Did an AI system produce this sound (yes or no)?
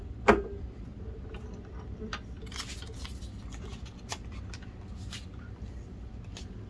no